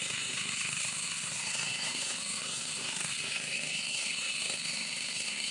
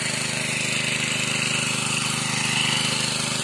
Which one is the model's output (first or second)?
first